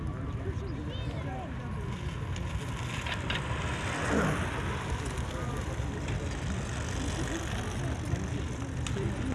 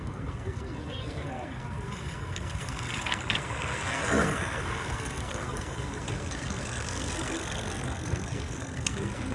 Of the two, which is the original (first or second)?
first